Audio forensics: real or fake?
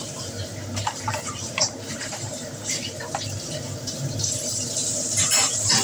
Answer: fake